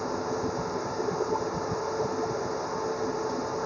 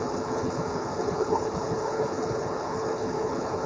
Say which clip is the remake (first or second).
second